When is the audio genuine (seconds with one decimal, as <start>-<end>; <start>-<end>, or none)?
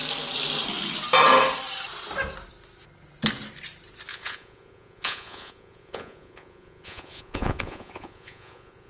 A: 0.0-4.1